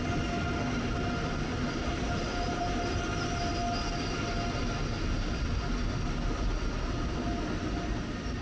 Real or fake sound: real